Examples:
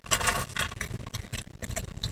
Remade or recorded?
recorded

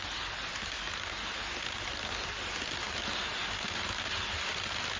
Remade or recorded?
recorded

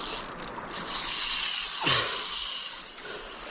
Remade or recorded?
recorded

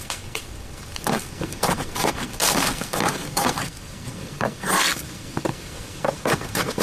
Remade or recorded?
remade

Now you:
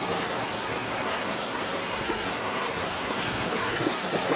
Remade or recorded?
remade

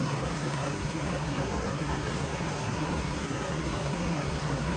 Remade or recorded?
remade